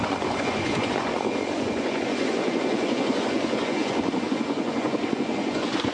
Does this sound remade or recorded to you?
remade